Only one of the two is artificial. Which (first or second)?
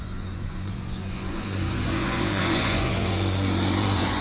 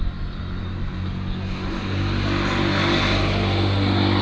first